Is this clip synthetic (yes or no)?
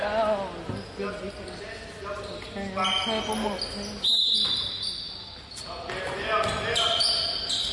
no